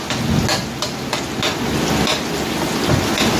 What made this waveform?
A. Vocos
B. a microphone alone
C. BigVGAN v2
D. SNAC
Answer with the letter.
B